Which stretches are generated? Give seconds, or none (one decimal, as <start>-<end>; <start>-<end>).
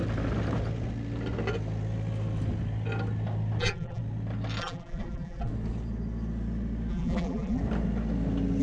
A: 3.6-4.0; 4.6-5.5; 6.9-7.6